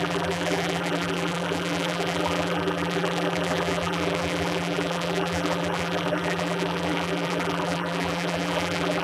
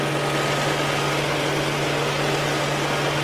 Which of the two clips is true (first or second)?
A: second